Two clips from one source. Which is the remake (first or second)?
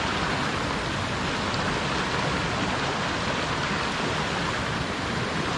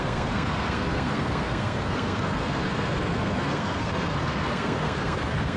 second